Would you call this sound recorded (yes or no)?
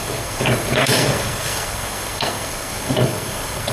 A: no